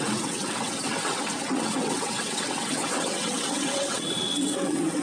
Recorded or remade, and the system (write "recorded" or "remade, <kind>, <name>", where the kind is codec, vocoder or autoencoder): remade, vocoder, WaveNeXt